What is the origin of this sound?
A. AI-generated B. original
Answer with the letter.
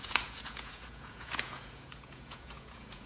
A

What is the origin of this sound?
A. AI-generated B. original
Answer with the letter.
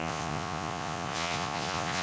A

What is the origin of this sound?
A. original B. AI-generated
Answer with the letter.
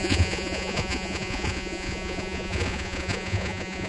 B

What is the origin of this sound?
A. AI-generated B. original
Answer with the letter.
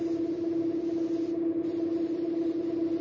B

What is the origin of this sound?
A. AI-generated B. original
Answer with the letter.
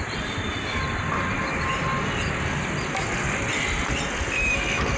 B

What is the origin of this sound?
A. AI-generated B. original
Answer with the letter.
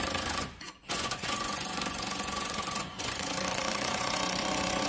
A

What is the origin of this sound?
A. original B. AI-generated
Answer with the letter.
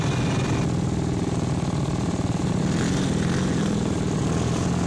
A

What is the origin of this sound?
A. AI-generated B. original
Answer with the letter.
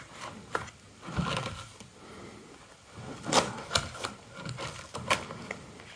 B